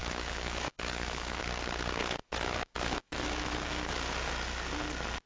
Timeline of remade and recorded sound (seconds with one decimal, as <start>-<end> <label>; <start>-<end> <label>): 0.0-1.4 remade; 1.4-2.2 recorded; 2.2-3.9 remade; 3.9-5.3 recorded